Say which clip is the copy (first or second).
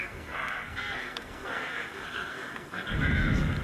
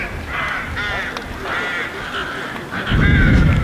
first